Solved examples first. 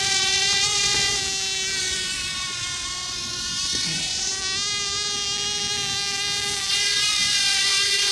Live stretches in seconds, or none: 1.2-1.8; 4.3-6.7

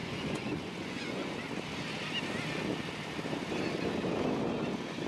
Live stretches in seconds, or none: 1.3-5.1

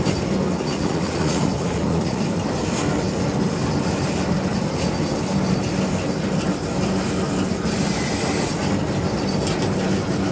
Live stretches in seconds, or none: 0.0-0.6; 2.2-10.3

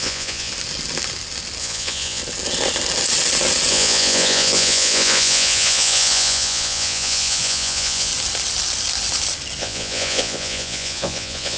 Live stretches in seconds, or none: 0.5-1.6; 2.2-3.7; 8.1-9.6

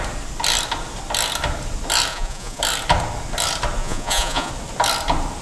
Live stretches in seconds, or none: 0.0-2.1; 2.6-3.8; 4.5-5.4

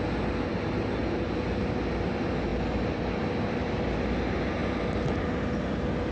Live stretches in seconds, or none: 0.0-6.1

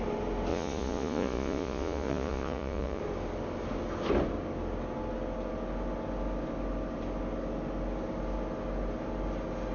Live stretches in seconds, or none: 0.0-0.5; 3.0-9.7

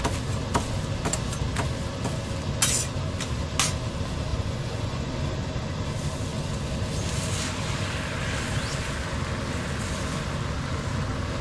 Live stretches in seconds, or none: 0.0-4.3; 5.1-11.4